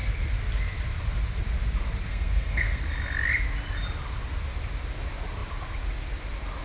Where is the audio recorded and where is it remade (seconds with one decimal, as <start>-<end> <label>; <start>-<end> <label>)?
0.0-2.1 recorded; 2.1-2.8 remade; 2.8-6.6 recorded

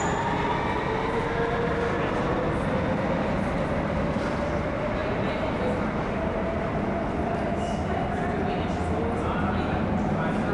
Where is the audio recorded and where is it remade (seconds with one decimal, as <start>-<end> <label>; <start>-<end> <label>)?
0.0-10.5 recorded

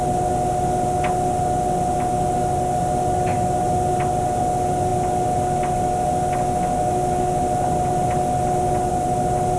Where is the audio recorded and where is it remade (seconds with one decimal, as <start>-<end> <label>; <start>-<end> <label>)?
0.0-9.6 recorded

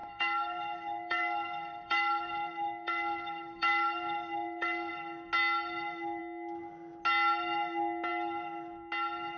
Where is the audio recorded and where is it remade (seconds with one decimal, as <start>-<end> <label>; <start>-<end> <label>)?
0.0-4.9 remade; 4.9-9.4 recorded